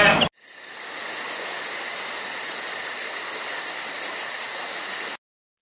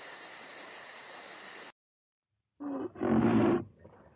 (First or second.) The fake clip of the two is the second